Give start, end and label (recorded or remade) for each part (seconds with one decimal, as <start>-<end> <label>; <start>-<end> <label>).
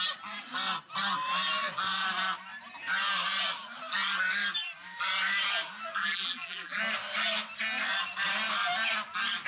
0.0-6.0 recorded; 6.0-6.8 remade; 6.8-9.5 recorded